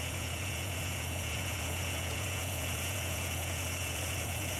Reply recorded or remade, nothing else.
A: remade